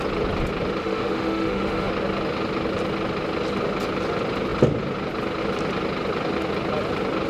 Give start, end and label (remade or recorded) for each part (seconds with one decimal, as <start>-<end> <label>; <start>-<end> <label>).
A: 0.0-0.8 recorded; 0.8-1.9 remade; 1.9-7.3 recorded